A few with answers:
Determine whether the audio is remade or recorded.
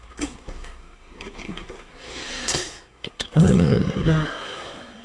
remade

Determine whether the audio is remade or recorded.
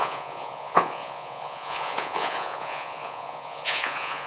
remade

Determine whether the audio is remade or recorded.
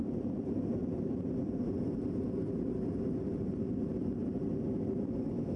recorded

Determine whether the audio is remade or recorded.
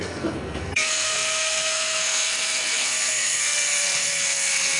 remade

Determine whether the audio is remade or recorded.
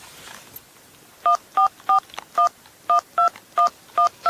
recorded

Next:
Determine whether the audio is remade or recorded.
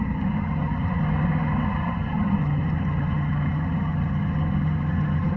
remade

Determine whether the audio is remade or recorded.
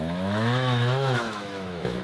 remade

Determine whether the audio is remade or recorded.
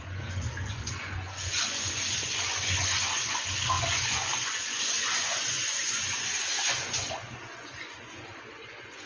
remade